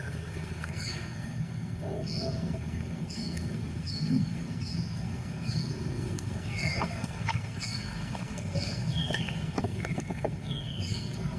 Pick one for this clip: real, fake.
fake